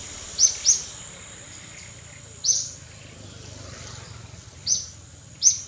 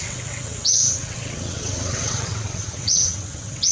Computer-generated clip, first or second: second